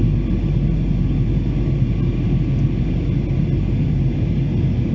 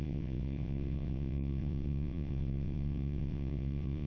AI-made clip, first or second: second